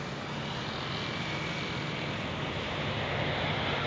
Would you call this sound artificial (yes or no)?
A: no